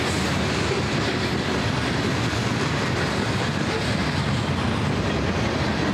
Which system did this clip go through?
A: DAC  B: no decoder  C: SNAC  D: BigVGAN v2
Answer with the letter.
B